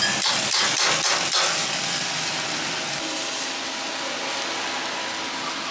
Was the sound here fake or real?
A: real